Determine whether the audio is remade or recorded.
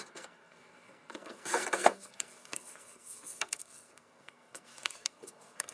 remade